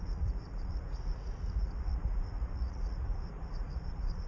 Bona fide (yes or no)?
no